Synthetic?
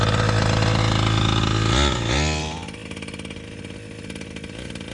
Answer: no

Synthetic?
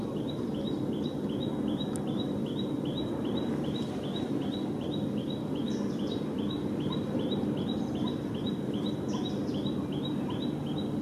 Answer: no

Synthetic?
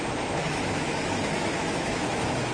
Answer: yes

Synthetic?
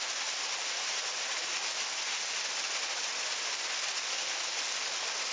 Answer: no